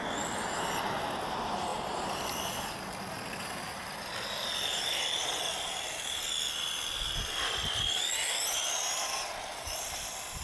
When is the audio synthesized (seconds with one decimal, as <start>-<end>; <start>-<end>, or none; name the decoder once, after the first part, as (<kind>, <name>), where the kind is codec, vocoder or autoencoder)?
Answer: none